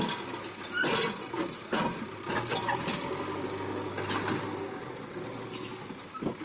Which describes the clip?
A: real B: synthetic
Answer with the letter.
A